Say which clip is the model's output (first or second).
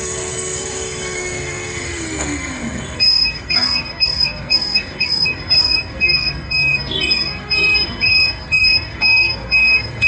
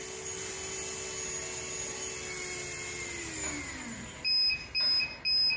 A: first